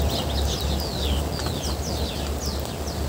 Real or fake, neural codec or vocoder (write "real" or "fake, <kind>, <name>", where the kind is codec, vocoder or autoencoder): real